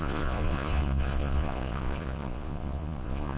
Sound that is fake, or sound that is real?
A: fake